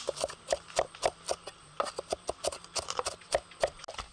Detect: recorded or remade recorded